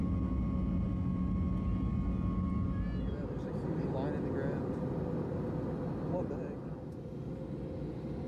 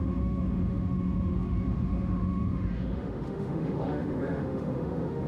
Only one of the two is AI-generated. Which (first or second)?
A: second